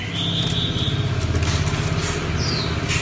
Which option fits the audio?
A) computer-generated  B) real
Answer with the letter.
B